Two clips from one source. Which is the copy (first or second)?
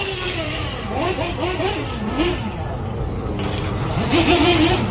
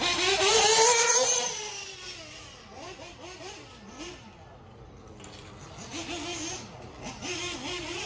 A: first